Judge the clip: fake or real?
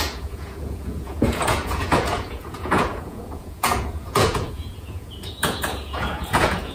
fake